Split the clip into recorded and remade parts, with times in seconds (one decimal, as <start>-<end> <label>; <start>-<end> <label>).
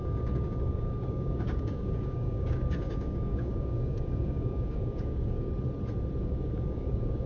0.0-5.5 remade; 5.5-6.2 recorded; 6.2-7.3 remade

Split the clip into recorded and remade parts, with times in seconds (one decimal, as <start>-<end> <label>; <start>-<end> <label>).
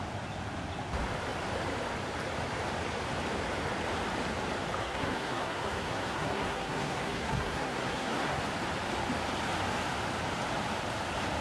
0.0-4.8 recorded; 4.8-8.4 remade; 8.4-11.4 recorded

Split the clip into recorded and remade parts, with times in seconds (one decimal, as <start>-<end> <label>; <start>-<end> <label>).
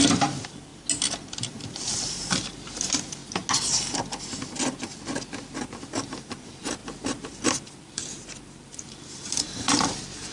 0.0-0.7 remade; 0.7-1.7 recorded; 1.7-3.2 remade; 3.2-5.5 recorded; 5.5-10.3 remade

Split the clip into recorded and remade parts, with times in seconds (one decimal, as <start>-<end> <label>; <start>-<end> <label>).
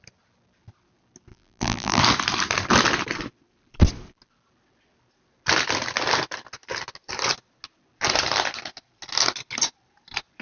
0.0-1.3 recorded; 1.3-2.0 remade; 2.0-10.4 recorded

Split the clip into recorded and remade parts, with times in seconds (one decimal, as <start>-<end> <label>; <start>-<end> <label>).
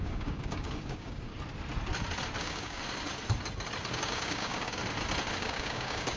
0.0-1.3 remade; 1.3-2.4 recorded; 2.4-2.8 remade; 2.8-3.9 recorded; 3.9-4.8 remade; 4.8-5.4 recorded; 5.4-6.2 remade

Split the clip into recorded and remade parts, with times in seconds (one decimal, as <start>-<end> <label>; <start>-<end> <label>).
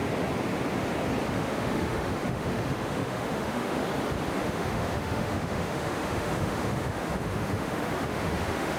0.0-1.3 recorded; 1.3-3.8 remade; 3.8-4.3 recorded; 4.3-8.8 remade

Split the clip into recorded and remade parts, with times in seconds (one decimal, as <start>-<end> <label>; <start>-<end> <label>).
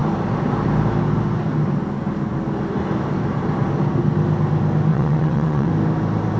0.0-4.9 recorded; 4.9-5.7 remade; 5.7-6.4 recorded